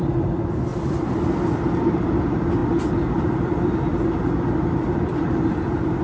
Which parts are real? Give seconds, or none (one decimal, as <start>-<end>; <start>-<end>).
2.6-4.9

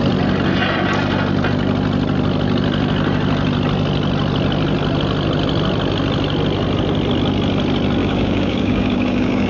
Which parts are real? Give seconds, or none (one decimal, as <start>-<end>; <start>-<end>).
0.0-8.0